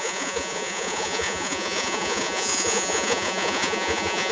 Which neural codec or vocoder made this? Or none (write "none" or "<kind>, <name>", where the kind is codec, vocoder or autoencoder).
vocoder, Vocos